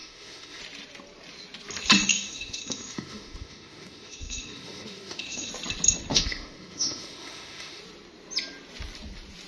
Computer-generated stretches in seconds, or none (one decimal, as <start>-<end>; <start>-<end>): 0.0-0.6; 2.1-5.5; 6.1-7.8